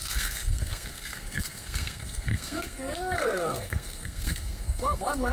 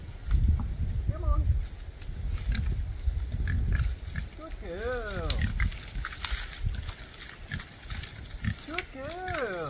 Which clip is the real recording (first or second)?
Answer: second